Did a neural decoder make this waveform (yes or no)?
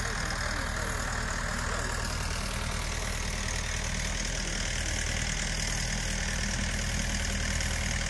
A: no